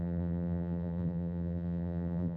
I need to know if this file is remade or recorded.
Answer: remade